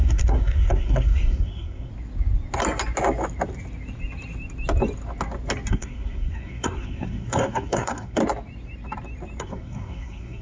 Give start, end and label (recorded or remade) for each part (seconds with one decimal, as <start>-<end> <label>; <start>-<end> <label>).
0.0-1.9 remade; 1.9-5.7 recorded; 5.7-8.2 remade; 8.2-9.4 recorded; 9.4-10.4 remade